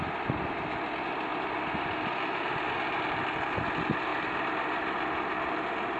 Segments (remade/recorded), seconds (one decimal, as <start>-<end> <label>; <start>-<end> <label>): 0.0-6.0 recorded